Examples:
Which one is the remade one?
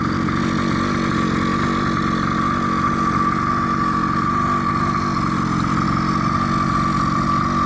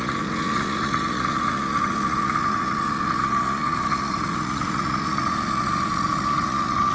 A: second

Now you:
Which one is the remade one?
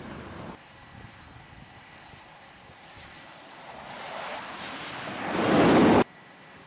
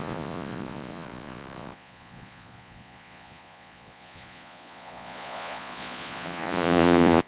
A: second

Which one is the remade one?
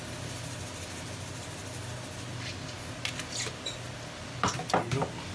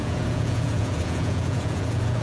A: second